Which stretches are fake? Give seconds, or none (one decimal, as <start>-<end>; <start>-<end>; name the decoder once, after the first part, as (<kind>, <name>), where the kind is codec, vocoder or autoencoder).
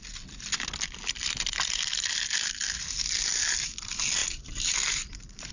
4.2-5.5 (vocoder, BigVGAN v2)